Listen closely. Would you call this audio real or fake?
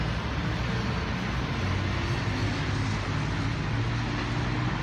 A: real